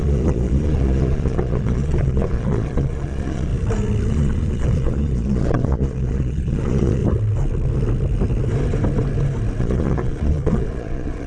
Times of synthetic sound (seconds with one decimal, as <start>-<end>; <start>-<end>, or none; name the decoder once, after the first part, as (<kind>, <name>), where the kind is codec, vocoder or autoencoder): 0.0-3.5 (vocoder, Vocos); 4.1-7.0; 9.6-11.3